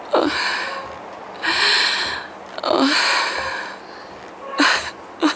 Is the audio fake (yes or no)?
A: no